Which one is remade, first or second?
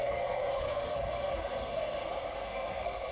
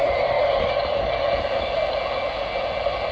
first